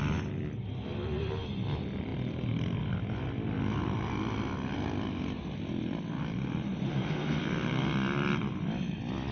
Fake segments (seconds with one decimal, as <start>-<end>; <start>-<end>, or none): 6.7-7.4